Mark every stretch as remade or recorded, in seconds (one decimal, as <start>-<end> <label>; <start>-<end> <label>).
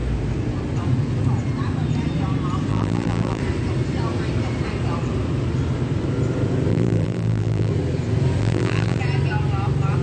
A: 0.0-2.7 recorded; 2.7-3.4 remade; 3.4-6.7 recorded; 6.7-7.7 remade; 7.7-8.4 recorded; 8.4-9.0 remade; 9.0-10.0 recorded